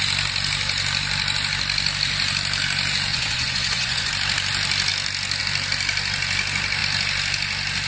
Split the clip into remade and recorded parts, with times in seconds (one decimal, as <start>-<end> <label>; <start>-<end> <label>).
0.0-3.1 recorded; 3.1-4.1 remade; 4.1-7.9 recorded